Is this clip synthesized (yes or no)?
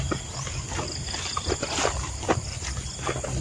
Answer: no